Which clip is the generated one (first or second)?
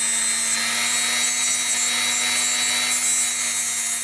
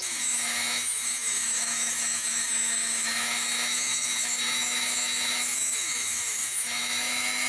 second